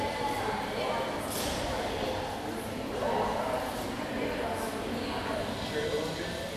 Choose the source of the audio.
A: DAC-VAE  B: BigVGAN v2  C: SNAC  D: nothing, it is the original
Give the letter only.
D